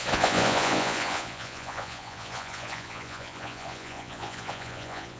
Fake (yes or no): yes